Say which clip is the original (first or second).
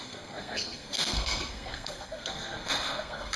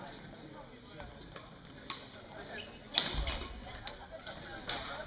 second